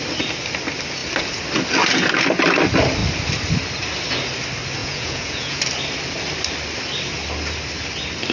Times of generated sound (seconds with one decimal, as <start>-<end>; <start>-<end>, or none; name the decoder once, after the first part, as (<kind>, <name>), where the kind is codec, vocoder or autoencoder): 4.8-5.6 (vocoder, Vocos)